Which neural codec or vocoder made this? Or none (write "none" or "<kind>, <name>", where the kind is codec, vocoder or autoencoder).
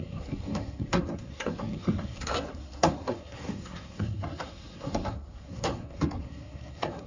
codec, SNAC